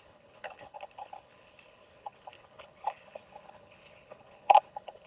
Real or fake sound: fake